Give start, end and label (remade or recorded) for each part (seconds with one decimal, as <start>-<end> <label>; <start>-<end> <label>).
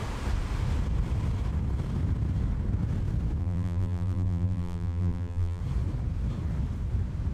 0.0-3.4 recorded; 3.4-5.6 remade; 5.6-7.3 recorded